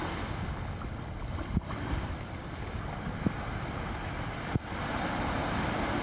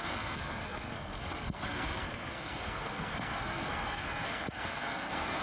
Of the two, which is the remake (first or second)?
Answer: second